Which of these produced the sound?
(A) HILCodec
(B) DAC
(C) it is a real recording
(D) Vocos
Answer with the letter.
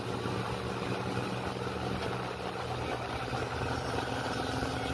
C